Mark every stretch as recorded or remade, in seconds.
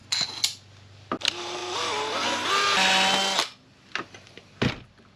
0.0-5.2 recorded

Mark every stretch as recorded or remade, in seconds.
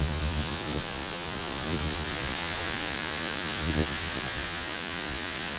0.0-5.6 remade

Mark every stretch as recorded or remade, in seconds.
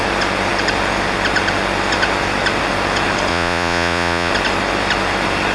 0.0-3.3 recorded; 3.3-4.3 remade; 4.3-5.5 recorded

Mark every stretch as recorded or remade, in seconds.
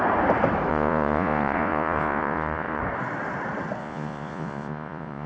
0.0-0.7 recorded; 0.7-2.8 remade; 2.8-3.8 recorded; 3.8-5.3 remade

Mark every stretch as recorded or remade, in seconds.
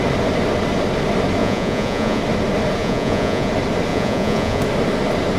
0.0-1.4 recorded; 1.4-2.2 remade; 2.2-2.8 recorded; 2.8-3.5 remade; 3.5-3.9 recorded; 3.9-4.6 remade; 4.6-5.4 recorded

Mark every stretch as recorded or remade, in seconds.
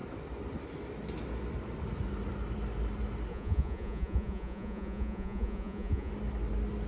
0.0-3.3 recorded; 3.3-6.1 remade; 6.1-6.9 recorded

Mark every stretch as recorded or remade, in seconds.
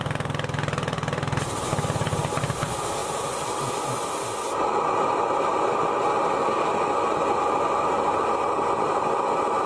0.0-9.7 recorded